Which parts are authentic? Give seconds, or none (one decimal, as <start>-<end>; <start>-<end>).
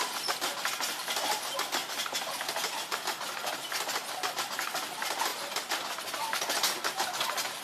0.0-7.6